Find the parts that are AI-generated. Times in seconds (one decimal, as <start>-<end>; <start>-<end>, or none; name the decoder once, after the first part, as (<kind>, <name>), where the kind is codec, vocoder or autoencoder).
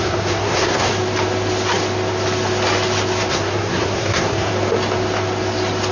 0.0-0.9 (codec, SNAC); 3.3-4.5